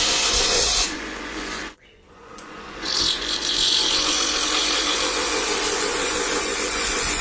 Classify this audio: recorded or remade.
remade